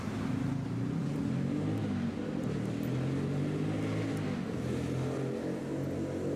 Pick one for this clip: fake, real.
real